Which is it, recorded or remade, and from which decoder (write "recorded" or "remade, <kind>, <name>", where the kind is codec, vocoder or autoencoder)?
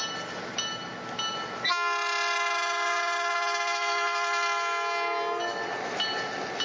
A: recorded